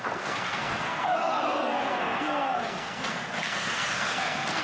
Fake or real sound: fake